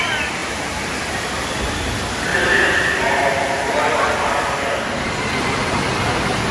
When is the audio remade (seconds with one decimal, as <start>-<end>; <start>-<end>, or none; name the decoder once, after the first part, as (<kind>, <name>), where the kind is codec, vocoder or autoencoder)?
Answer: 0.0-0.4 (vocoder, BigVGAN v2); 1.0-6.5